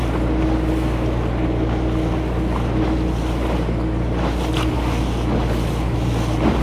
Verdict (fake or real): real